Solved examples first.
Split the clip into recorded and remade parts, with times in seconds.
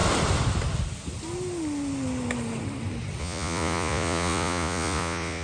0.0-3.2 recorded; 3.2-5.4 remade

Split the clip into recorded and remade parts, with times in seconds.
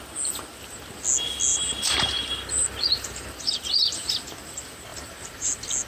0.0-1.5 recorded; 1.5-4.1 remade; 4.1-4.9 recorded; 4.9-5.5 remade; 5.5-5.9 recorded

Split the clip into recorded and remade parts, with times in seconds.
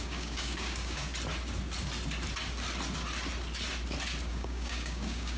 0.0-1.1 remade; 1.1-4.3 recorded; 4.3-5.4 remade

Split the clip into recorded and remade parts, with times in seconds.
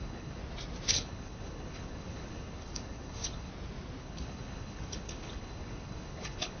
0.0-0.4 remade; 0.4-0.9 recorded; 0.9-3.5 remade; 3.5-4.0 recorded; 4.0-6.6 remade